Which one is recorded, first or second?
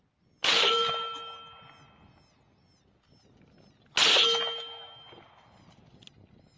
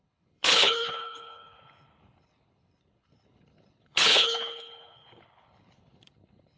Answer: first